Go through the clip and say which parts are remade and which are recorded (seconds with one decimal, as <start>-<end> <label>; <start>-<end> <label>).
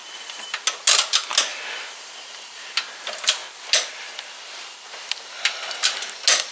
0.0-6.5 recorded